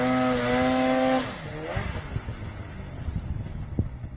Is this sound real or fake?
real